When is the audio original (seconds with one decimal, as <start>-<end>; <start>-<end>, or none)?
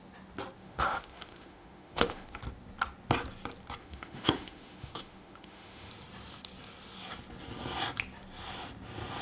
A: 0.0-0.6; 2.4-3.8; 5.9-9.2